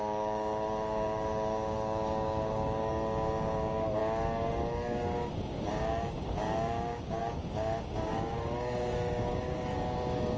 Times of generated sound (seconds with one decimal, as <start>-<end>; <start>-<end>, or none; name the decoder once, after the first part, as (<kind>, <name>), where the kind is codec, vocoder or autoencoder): 0.0-10.4 (codec, DAC)